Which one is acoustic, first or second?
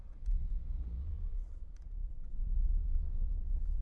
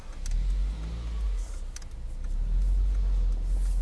second